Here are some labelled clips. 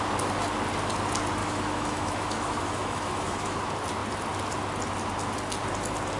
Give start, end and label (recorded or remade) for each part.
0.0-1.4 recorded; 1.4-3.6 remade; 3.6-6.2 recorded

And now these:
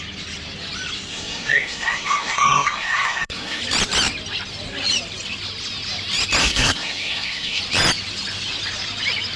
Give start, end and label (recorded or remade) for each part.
0.0-1.1 recorded; 1.1-3.6 remade; 3.6-6.4 recorded; 6.4-7.6 remade; 7.6-9.4 recorded

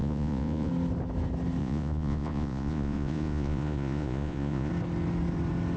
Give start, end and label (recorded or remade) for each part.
0.0-0.7 remade; 0.7-1.6 recorded; 1.6-4.7 remade; 4.7-5.8 recorded